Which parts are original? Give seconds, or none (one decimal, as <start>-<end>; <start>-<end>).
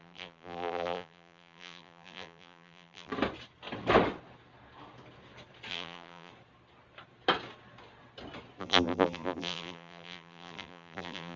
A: 3.1-5.7; 6.3-8.6